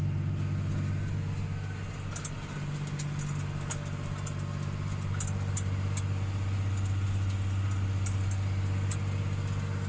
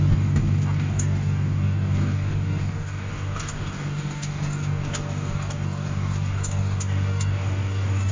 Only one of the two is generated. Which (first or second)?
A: second